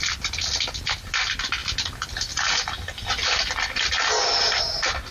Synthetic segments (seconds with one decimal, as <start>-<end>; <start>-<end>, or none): none